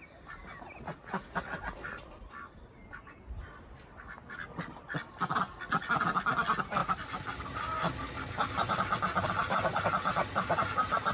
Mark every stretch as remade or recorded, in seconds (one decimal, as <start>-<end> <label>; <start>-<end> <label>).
0.0-11.1 recorded

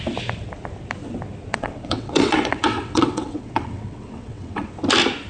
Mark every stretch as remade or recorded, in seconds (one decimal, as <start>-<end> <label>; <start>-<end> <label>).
0.0-1.5 recorded; 1.5-4.7 remade; 4.7-5.3 recorded